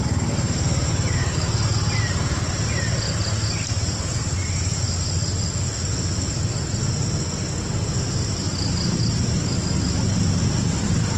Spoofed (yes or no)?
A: no